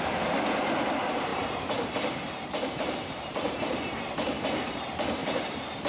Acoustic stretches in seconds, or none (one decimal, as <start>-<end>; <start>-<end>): 0.0-1.3; 4.8-5.2